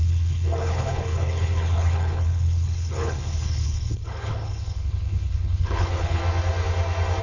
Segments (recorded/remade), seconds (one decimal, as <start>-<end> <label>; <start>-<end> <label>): 0.0-6.2 remade; 6.2-7.2 recorded